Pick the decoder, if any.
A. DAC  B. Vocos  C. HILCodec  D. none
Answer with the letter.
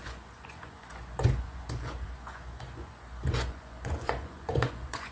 B